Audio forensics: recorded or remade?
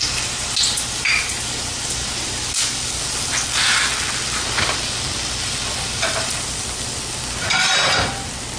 recorded